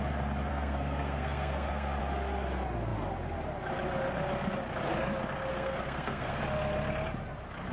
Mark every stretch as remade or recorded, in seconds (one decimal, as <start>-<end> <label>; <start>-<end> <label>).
0.0-0.5 recorded; 0.5-2.0 remade; 2.0-5.5 recorded; 5.5-6.4 remade; 6.4-7.7 recorded